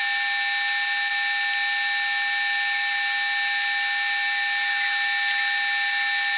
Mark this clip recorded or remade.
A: recorded